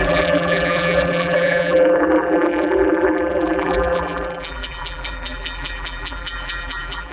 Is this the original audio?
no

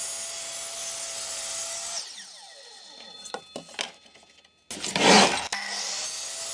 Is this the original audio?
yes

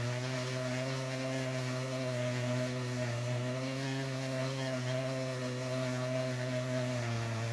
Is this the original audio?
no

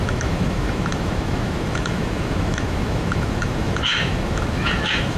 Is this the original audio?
no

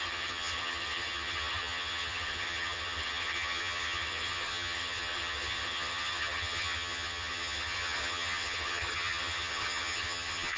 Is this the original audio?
no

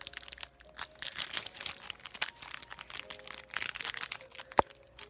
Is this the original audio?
yes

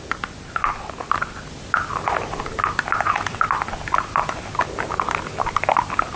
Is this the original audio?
yes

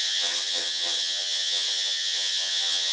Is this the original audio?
no